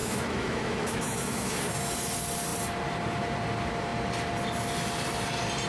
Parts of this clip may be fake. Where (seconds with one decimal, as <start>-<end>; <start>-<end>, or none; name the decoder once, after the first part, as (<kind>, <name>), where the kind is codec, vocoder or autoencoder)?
0.0-1.6 (autoencoder, DAC-VAE)